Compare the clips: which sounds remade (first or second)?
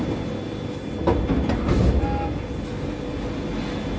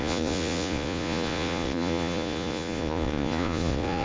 second